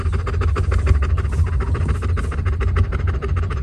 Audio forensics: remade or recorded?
recorded